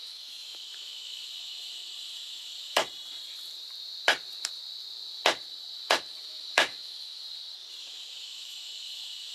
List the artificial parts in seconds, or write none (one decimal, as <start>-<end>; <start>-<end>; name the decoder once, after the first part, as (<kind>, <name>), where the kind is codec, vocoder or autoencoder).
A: 0.0-2.8 (autoencoder, DAC-VAE); 6.2-7.2; 7.8-9.3